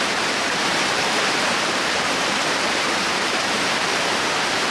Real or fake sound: fake